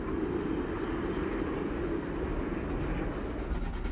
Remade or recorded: recorded